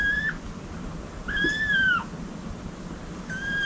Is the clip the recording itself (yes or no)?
yes